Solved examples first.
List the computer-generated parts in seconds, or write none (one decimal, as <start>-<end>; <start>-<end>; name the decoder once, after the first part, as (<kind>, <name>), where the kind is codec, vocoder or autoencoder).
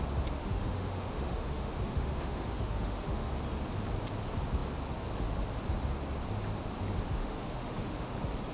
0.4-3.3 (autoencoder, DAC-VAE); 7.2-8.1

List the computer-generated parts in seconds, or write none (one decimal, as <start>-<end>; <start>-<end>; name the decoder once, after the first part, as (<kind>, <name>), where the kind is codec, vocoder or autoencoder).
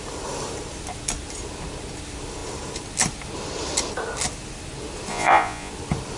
5.1-5.7 (vocoder, Vocos)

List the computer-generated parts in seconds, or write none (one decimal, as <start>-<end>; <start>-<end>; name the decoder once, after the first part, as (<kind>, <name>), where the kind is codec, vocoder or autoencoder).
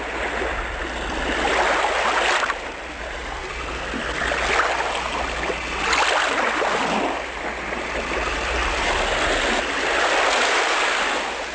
none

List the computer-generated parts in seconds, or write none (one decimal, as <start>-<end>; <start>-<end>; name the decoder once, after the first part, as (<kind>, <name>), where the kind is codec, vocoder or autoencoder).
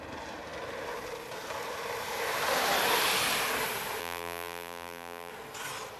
4.0-5.3 (vocoder, BigVGAN v2)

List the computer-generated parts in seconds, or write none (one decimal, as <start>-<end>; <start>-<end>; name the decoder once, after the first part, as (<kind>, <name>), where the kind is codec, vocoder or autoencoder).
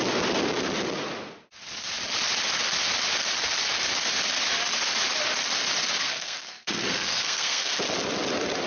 6.0-7.7 (codec, SNAC)